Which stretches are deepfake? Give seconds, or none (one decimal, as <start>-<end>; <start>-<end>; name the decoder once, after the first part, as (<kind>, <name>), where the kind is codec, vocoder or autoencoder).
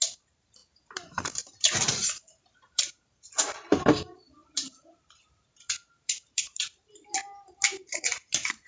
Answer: 0.0-8.7 (vocoder, BigVGAN v2)